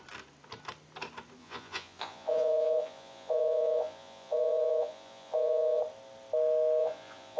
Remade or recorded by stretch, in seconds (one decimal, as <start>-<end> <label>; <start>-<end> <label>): 0.0-1.4 recorded; 1.4-5.8 remade; 5.8-6.8 recorded; 6.8-7.4 remade